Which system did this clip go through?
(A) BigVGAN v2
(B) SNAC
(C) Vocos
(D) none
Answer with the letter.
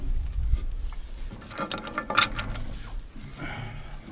D